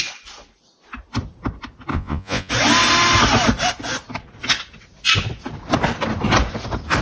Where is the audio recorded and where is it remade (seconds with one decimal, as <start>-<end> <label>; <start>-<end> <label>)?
0.0-1.9 recorded; 1.9-2.5 remade; 2.5-7.0 recorded